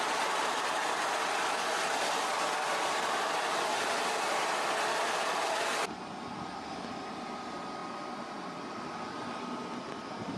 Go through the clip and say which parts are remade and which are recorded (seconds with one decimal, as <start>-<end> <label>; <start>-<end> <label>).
0.0-10.4 recorded

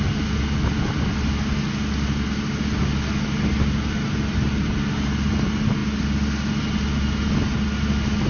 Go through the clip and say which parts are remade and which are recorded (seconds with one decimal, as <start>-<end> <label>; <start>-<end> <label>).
0.0-8.3 recorded

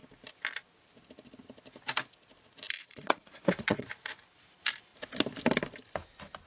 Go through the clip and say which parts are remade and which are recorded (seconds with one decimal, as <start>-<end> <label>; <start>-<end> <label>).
0.0-2.8 recorded; 2.8-3.9 remade; 3.9-6.5 recorded

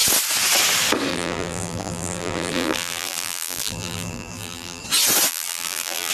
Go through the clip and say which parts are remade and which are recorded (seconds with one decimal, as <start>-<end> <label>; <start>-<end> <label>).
0.0-1.1 recorded; 1.1-4.8 remade; 4.8-5.3 recorded; 5.3-6.1 remade

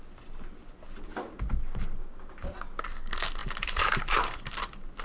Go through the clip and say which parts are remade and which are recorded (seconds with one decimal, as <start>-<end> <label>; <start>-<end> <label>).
0.0-3.4 recorded; 3.4-4.4 remade; 4.4-5.0 recorded

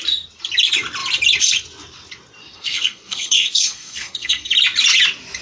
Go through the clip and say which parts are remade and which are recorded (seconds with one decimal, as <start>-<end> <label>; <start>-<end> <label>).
0.0-2.4 recorded; 2.4-4.5 remade; 4.5-5.4 recorded